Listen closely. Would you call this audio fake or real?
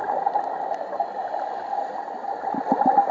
real